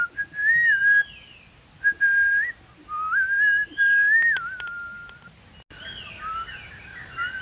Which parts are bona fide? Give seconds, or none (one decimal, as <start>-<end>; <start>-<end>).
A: 0.0-7.4